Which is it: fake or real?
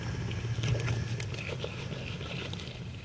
real